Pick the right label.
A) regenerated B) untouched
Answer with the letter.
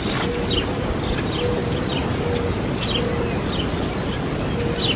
B